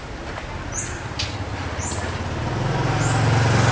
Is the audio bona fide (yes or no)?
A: yes